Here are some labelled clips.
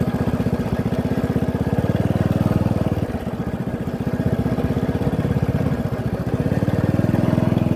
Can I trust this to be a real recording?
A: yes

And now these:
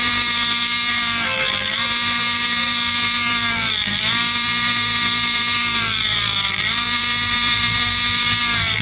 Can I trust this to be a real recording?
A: no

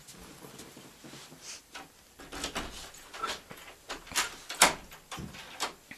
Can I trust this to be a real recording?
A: yes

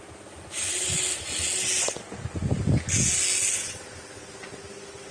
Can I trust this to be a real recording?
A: yes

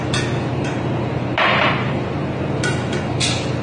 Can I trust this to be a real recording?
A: yes